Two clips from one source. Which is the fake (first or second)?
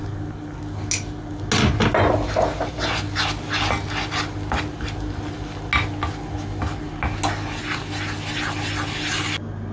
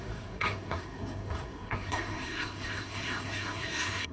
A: second